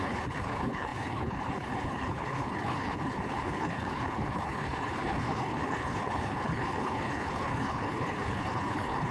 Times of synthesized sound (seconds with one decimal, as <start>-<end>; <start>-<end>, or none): 0.0-9.1

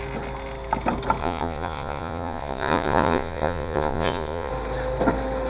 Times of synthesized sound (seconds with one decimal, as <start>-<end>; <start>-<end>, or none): 1.2-4.5

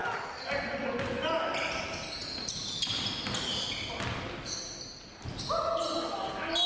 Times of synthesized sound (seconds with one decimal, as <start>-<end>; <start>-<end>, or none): none

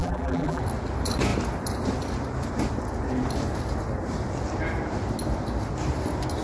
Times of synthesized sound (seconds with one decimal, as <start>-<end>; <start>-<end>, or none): 0.0-0.6

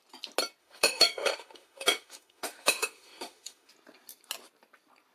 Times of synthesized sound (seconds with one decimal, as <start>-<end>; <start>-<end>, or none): 0.6-3.7